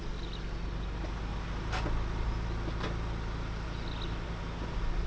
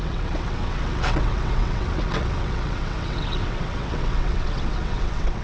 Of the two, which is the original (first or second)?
first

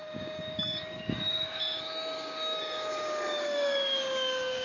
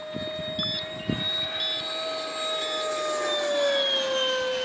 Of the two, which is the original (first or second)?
second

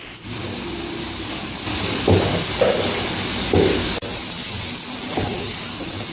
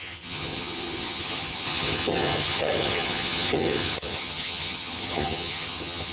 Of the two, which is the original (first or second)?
first